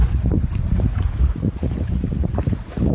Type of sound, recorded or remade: remade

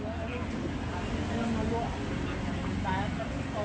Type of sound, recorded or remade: recorded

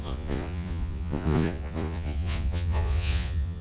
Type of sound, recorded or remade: remade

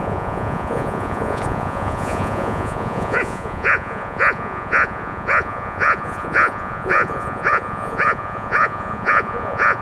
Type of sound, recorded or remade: remade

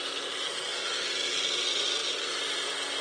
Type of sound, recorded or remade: recorded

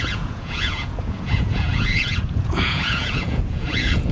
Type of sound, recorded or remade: remade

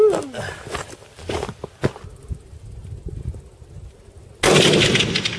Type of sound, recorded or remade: recorded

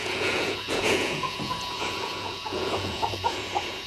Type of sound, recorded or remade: remade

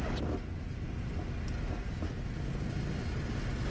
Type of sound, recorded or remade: recorded